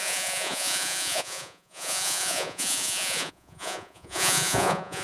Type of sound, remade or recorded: remade